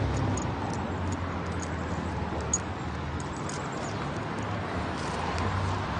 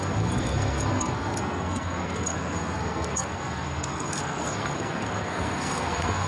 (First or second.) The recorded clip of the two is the first